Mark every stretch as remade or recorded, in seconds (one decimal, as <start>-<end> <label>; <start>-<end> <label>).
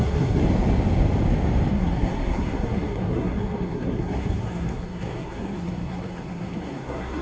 0.0-0.4 remade; 0.4-1.7 recorded; 1.7-7.2 remade